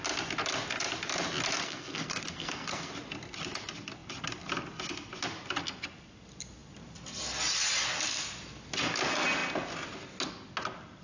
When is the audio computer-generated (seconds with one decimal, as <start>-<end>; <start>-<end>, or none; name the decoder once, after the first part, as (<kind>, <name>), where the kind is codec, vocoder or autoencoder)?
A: 1.6-2.9 (codec, SNAC)